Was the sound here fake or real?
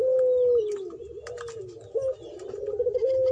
real